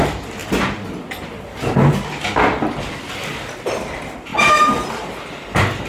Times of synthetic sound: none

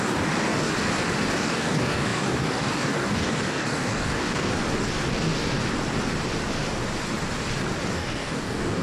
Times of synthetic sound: 0.0-0.7 (codec, DAC); 1.3-4.5; 5.1-5.6; 7.9-8.8

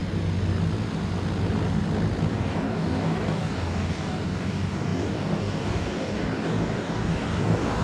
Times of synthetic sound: 2.3-7.8 (codec, DAC)

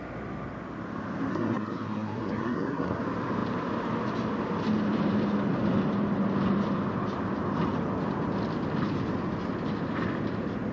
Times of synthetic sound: 1.3-3.0 (codec, SNAC)

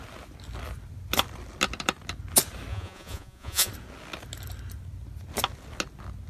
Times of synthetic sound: 2.7-3.7 (vocoder, Vocos)